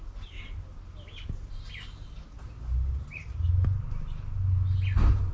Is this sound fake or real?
real